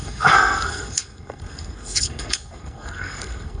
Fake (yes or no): yes